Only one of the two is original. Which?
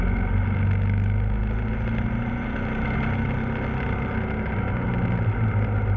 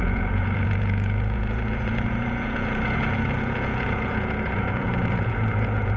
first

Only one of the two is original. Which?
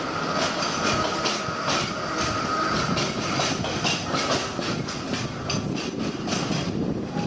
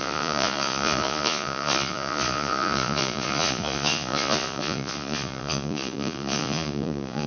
first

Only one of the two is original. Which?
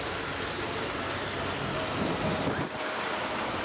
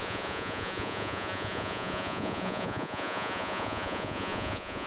first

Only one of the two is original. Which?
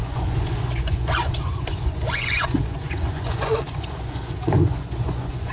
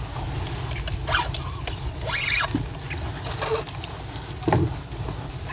second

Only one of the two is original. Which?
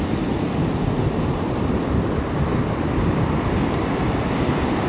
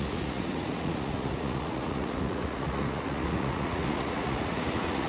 first